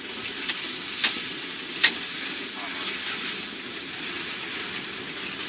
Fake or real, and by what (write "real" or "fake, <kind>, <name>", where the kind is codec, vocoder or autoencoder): real